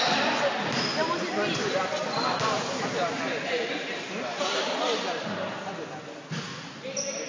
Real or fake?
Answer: real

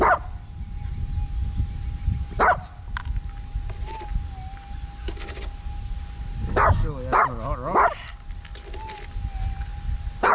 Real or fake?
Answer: real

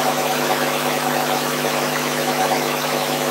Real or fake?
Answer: fake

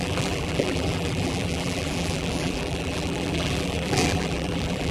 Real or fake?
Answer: fake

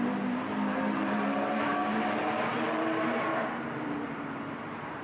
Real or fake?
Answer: fake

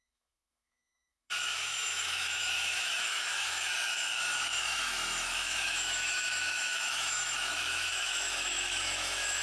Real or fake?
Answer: fake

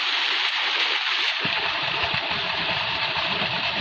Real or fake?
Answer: fake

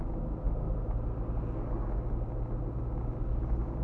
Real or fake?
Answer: real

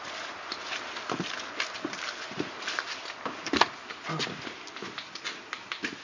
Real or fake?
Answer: real